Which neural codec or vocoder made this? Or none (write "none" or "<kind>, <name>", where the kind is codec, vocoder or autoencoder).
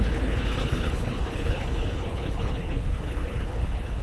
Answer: codec, HILCodec